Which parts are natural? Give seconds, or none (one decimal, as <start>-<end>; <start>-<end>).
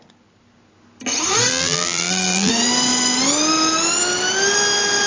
0.0-1.5; 2.5-5.1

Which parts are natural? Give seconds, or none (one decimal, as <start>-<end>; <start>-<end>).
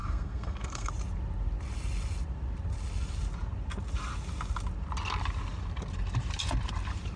0.9-7.2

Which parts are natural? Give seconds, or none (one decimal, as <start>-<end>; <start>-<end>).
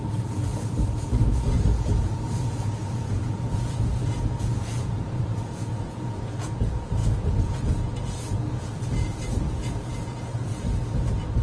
10.5-11.4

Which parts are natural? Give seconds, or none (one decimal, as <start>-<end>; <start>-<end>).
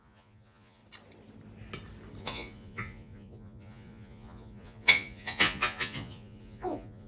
0.8-2.2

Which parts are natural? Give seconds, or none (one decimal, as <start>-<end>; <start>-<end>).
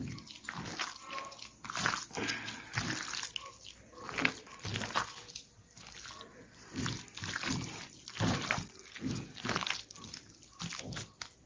0.0-11.5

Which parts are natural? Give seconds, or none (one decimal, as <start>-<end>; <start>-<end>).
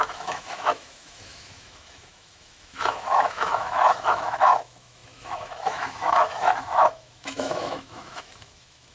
none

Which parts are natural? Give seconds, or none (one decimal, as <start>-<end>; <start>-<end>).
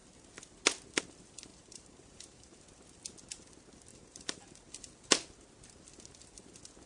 0.0-1.5; 2.6-3.9; 4.6-6.9